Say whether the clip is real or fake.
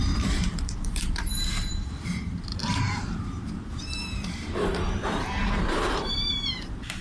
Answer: fake